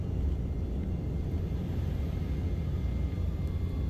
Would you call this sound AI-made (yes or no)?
no